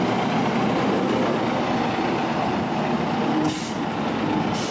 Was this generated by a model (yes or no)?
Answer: no